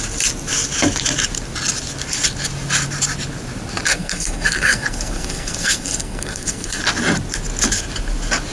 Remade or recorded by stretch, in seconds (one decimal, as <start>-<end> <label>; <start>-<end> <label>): 0.0-3.9 recorded; 3.9-6.8 remade; 6.8-8.5 recorded